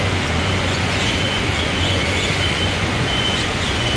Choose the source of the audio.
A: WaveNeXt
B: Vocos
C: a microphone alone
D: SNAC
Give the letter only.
B